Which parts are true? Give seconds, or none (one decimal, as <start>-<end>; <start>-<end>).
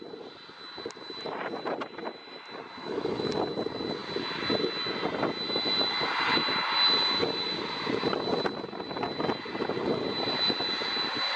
0.0-2.8; 3.3-11.4